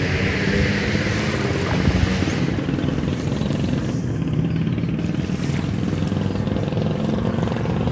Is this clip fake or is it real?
real